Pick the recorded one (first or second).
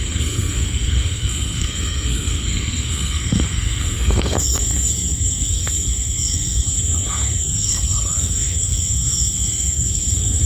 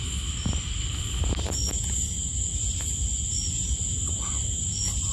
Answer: second